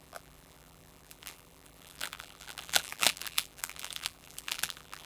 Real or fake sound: fake